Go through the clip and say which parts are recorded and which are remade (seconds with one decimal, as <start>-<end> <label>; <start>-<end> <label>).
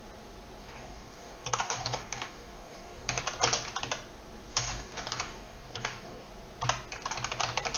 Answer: 0.0-0.6 recorded; 0.6-3.2 remade; 3.2-4.5 recorded; 4.5-6.3 remade; 6.3-7.8 recorded